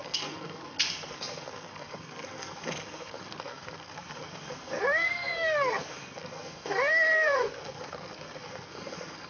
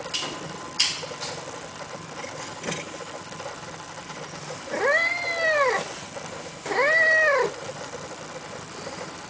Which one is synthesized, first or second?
first